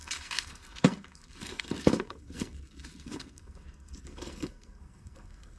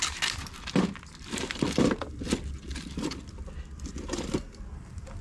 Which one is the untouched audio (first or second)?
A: second